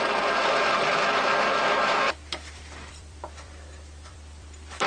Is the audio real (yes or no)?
no